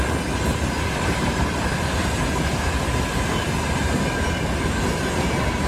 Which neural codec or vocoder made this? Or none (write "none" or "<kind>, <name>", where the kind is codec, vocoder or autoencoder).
none